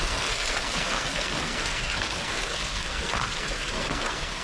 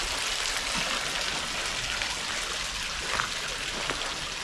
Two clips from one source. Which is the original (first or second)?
second